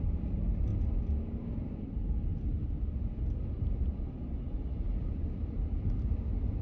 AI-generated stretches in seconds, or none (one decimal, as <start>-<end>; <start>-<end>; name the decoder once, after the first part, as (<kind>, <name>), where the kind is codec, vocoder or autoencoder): 0.0-0.7 (vocoder, BigVGAN v2); 1.4-2.3